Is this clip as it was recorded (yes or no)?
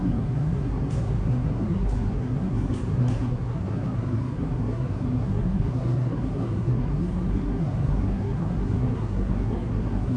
no